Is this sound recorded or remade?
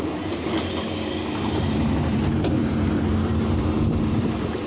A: remade